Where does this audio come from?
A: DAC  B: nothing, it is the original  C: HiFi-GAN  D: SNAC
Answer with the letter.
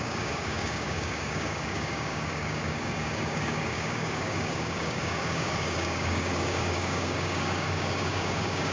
A